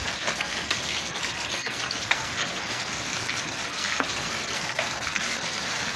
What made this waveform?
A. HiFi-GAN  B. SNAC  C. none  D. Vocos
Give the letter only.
B